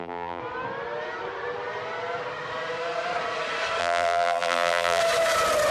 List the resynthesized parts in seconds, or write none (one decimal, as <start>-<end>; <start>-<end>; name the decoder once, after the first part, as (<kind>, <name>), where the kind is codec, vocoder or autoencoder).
0.0-0.4 (vocoder, BigVGAN v2); 3.8-5.0